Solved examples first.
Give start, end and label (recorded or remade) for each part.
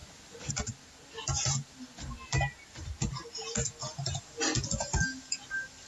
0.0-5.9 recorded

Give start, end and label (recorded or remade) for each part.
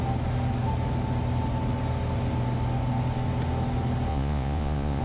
0.0-4.1 recorded; 4.1-5.0 remade